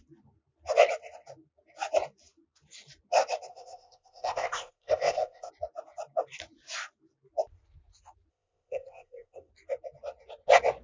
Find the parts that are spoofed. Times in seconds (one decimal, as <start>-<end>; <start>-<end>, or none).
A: 3.5-5.5; 8.3-9.5